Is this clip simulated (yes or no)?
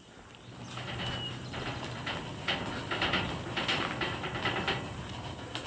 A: no